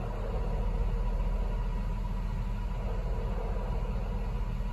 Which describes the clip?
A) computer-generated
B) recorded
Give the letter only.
B